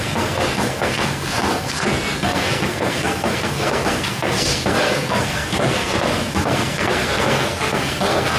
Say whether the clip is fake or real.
fake